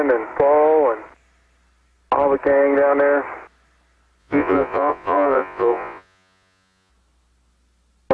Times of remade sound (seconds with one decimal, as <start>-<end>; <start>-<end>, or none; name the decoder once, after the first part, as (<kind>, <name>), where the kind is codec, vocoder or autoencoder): 4.2-6.9 (vocoder, Vocos)